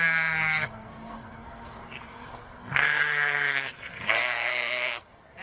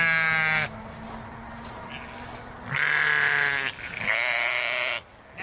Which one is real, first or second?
second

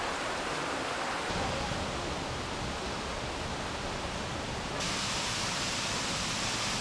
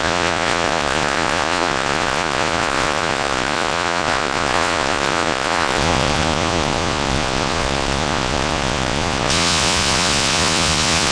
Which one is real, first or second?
first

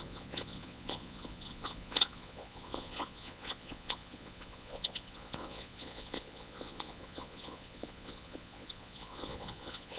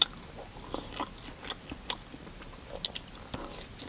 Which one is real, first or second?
second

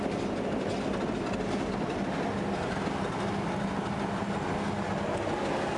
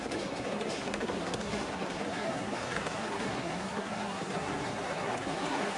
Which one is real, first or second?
first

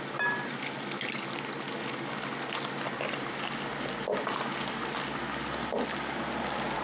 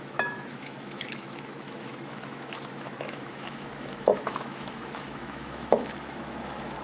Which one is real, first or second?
first